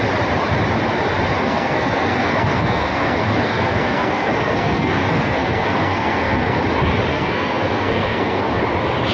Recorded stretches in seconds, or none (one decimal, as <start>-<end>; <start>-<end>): 0.0-1.4; 6.6-7.1; 8.6-9.1